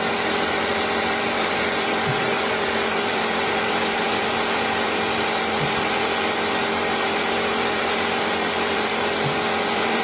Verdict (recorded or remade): remade